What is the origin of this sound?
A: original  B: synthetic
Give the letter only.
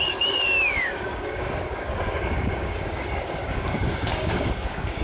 B